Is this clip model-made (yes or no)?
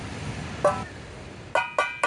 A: no